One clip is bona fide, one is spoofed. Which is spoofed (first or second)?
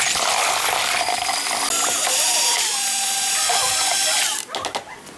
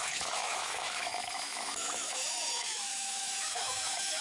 second